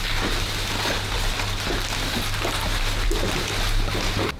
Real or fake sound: real